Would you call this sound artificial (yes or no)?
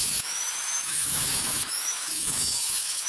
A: yes